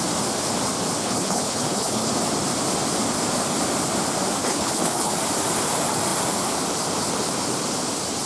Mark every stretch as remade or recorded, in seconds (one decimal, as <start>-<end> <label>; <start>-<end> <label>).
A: 0.0-1.0 recorded; 1.0-2.1 remade; 2.1-4.4 recorded; 4.4-5.1 remade; 5.1-8.3 recorded